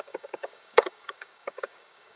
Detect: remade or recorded remade